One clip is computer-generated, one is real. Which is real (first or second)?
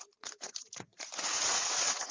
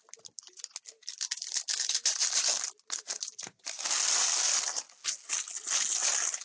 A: second